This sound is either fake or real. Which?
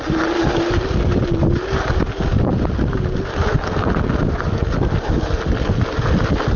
real